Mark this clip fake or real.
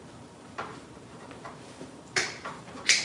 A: fake